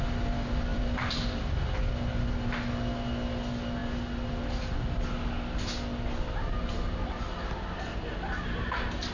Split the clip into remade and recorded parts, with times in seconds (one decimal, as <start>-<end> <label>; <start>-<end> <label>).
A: 0.0-0.7 recorded; 0.7-1.4 remade; 1.4-9.1 recorded